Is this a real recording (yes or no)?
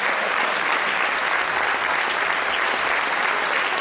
yes